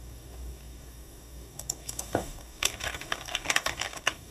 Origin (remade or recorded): remade